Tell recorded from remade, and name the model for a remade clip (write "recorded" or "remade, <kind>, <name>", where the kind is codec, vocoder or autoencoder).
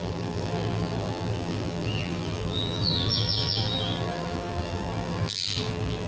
remade, vocoder, BigVGAN v2